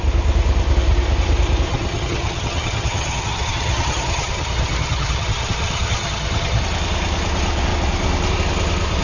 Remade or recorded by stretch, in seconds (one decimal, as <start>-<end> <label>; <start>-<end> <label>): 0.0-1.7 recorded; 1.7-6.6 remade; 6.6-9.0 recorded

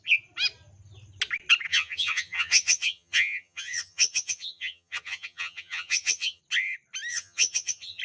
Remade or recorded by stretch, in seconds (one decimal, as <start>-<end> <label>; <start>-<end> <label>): 0.0-1.7 recorded; 1.7-6.4 remade; 6.4-7.1 recorded; 7.1-8.0 remade

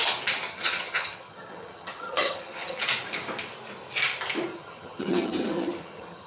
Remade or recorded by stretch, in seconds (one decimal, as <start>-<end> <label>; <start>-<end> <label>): 0.0-0.5 recorded; 0.5-2.8 remade; 2.8-4.5 recorded; 4.5-6.3 remade